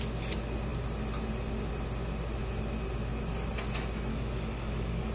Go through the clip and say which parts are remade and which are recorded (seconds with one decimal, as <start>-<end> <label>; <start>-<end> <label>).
0.0-4.1 recorded; 4.1-5.1 remade